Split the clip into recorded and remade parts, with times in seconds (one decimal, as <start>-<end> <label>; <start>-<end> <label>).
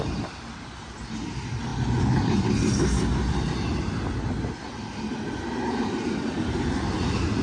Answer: 0.0-7.4 recorded